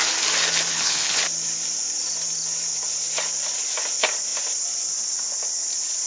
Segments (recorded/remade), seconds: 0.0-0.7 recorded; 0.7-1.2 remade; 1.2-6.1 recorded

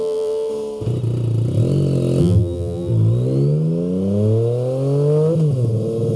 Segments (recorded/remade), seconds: 0.0-0.5 remade; 0.5-2.2 recorded; 2.2-2.9 remade; 2.9-6.2 recorded

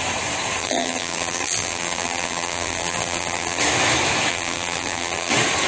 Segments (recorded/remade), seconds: 0.0-0.6 recorded; 0.6-3.6 remade; 3.6-4.3 recorded; 4.3-5.3 remade; 5.3-5.7 recorded

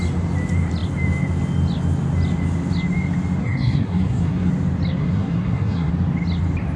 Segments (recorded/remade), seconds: 0.0-3.4 recorded; 3.4-4.5 remade; 4.5-5.0 recorded; 5.0-5.9 remade; 5.9-6.8 recorded

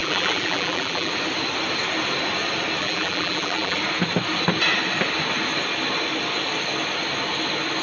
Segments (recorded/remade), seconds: 0.0-1.1 remade; 1.1-2.8 recorded; 2.8-3.8 remade; 3.8-7.8 recorded

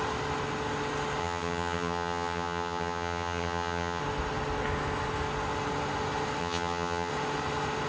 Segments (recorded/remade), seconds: 0.0-1.2 recorded; 1.2-4.0 remade; 4.0-6.4 recorded; 6.4-7.1 remade; 7.1-7.9 recorded

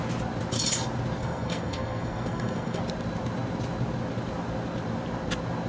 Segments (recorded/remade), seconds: 0.0-1.2 recorded; 1.2-2.8 remade; 2.8-5.7 recorded

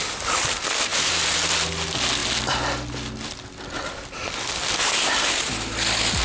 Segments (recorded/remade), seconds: 0.0-6.2 recorded